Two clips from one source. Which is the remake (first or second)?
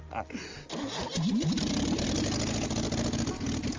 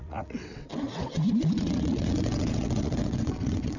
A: second